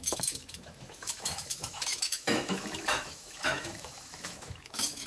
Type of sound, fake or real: fake